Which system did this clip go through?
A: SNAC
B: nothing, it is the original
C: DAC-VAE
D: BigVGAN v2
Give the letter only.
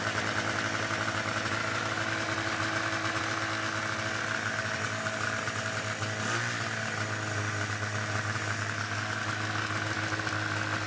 B